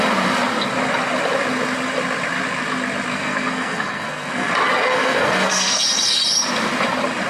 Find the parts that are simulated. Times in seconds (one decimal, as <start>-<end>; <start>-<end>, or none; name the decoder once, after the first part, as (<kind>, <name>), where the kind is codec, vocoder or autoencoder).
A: 3.1-4.5 (codec, SNAC); 4.9-5.8